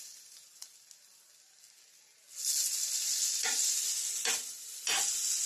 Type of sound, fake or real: real